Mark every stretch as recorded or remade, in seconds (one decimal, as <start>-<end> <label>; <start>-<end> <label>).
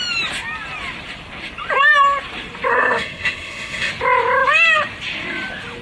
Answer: 0.0-2.7 recorded; 2.7-3.9 remade; 3.9-5.8 recorded